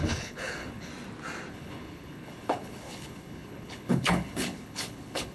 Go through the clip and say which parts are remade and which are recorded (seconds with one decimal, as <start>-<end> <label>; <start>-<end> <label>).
0.0-0.9 remade; 0.9-1.5 recorded; 1.5-5.3 remade